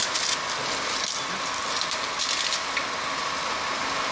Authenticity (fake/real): real